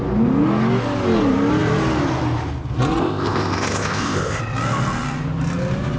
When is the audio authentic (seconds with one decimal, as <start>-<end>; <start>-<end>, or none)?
0.0-3.0; 4.4-6.0